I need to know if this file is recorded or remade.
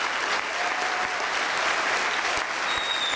recorded